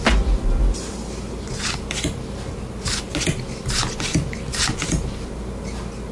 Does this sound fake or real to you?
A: real